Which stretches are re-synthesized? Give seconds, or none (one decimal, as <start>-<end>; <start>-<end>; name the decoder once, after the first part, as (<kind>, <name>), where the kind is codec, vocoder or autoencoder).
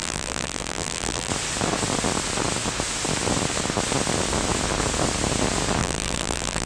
0.0-1.3 (vocoder, BigVGAN v2); 5.8-6.7